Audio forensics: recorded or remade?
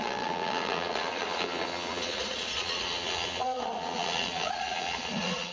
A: remade